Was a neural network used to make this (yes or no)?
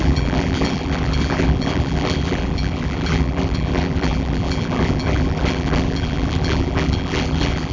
yes